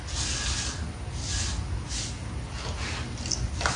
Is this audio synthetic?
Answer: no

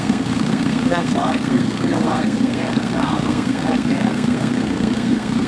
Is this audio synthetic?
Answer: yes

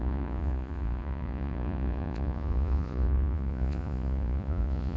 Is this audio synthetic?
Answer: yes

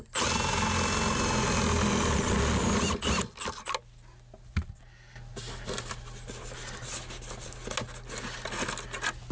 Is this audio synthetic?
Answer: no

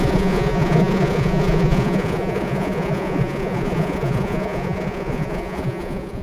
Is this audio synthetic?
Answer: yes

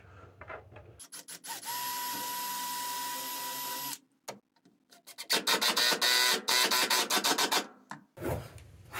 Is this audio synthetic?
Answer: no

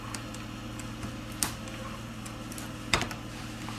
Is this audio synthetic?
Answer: no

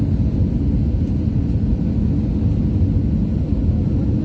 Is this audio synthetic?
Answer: no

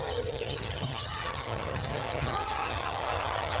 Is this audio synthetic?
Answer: yes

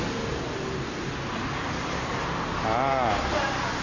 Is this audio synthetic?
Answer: no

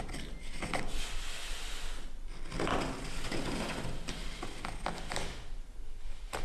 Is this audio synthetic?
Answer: no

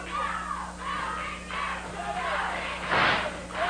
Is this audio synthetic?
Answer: no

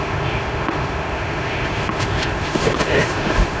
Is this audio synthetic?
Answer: yes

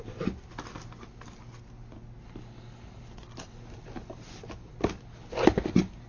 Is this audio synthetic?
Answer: no